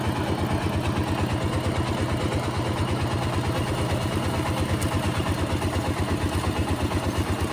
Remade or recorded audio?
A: recorded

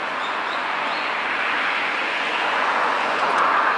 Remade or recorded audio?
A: remade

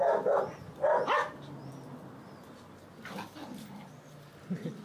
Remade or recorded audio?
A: recorded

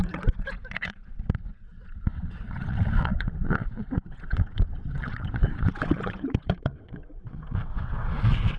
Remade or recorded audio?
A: remade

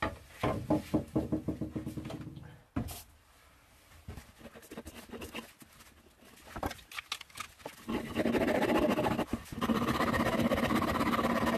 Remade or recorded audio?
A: recorded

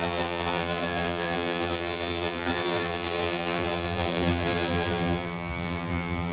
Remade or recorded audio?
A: remade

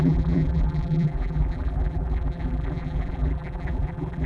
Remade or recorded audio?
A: remade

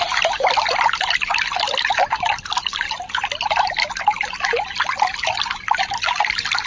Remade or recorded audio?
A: recorded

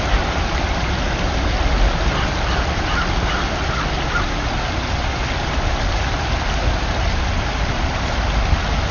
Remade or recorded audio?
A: recorded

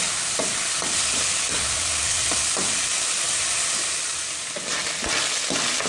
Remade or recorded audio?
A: recorded